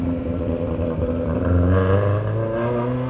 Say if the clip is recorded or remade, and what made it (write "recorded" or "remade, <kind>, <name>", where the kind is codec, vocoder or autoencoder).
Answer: recorded